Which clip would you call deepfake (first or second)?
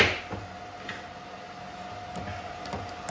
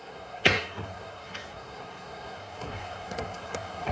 second